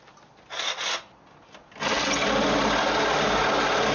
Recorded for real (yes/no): yes